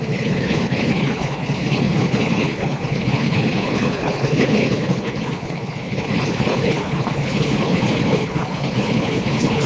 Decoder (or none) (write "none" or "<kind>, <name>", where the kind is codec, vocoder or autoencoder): codec, HILCodec